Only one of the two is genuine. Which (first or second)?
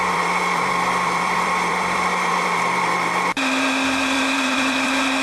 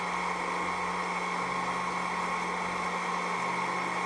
second